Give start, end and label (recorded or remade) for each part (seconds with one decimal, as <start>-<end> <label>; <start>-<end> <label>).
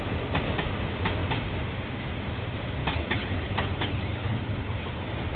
0.0-2.8 recorded; 2.8-4.9 remade; 4.9-5.4 recorded